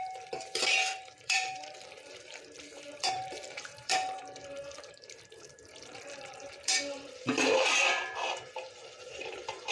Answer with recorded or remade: remade